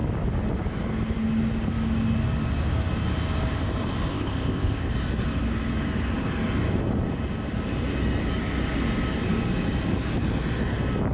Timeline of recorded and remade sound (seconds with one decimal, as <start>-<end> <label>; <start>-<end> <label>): 0.0-4.1 recorded; 4.1-4.9 remade; 4.9-11.1 recorded